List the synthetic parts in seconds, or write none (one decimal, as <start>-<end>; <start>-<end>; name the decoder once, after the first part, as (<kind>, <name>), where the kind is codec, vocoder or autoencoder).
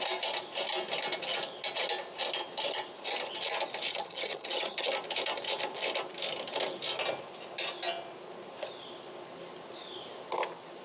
3.9-4.9 (vocoder, HiFi-GAN)